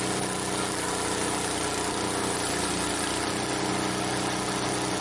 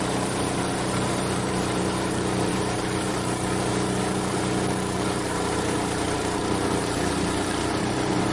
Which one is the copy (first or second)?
second